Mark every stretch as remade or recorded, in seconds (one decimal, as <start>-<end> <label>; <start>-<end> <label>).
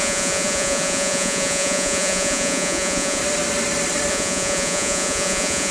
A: 0.0-3.2 remade; 3.2-4.1 recorded; 4.1-5.7 remade